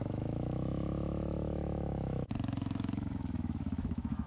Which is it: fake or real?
fake